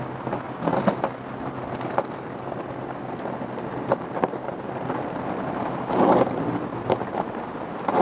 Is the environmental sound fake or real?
real